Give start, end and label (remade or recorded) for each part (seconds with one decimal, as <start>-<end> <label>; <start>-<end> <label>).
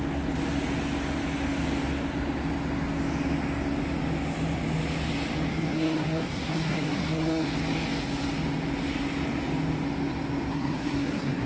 0.0-5.5 recorded; 5.5-7.5 remade; 7.5-10.5 recorded; 10.5-11.5 remade